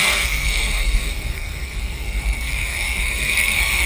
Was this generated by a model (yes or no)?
yes